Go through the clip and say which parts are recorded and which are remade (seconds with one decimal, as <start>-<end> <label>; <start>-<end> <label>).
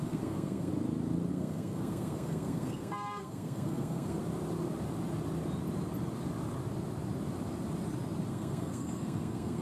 0.0-0.7 remade; 0.7-1.3 recorded; 1.3-4.2 remade; 4.2-8.3 recorded; 8.3-9.6 remade